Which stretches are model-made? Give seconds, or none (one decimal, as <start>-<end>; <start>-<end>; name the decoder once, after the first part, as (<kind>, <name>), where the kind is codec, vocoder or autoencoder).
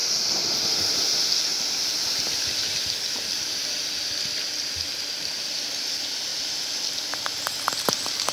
0.0-0.6 (vocoder, BigVGAN v2); 1.5-2.9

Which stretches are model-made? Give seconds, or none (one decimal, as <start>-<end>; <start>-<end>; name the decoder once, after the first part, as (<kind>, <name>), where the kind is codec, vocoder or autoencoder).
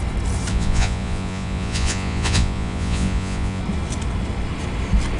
0.5-3.6 (vocoder, Vocos)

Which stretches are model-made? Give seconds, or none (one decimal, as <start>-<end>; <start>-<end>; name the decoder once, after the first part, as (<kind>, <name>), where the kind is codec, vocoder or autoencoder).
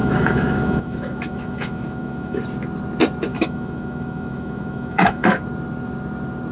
0.0-2.4 (autoencoder, DAC-VAE); 3.3-5.4